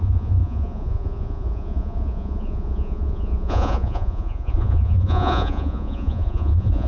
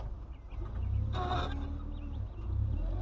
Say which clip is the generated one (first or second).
first